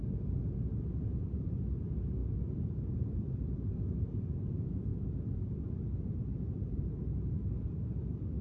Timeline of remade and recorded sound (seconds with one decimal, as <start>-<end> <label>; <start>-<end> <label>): 0.0-2.2 recorded; 2.2-3.9 remade; 3.9-8.4 recorded